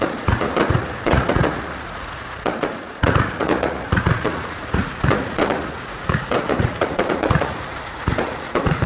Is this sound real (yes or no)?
no